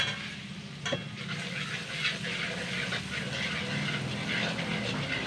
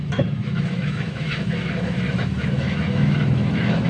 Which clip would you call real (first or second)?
first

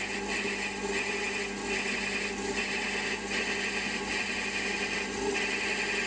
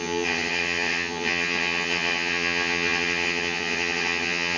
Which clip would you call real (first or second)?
first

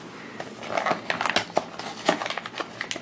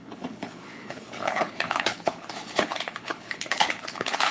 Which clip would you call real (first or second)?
first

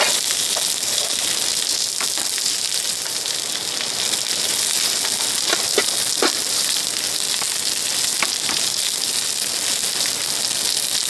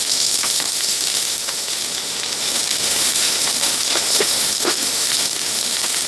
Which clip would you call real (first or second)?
first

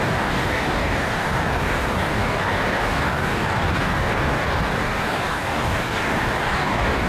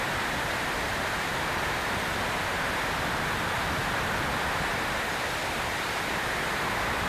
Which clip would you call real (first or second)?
second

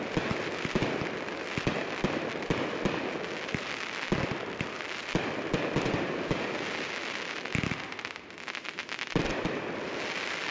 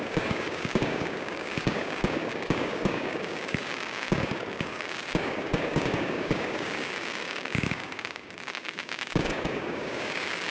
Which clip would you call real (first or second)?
first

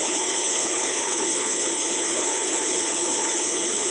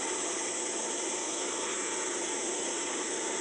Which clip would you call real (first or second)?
second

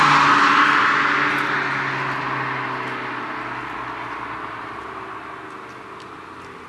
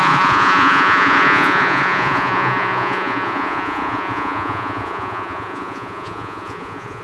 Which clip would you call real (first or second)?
first